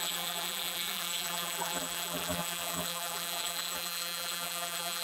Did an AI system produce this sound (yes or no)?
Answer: yes